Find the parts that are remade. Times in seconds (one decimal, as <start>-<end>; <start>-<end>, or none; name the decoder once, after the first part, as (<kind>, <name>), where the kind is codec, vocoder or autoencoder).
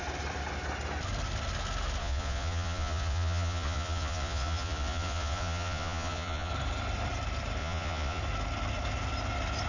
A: 2.0-6.5 (vocoder, Vocos); 7.6-8.2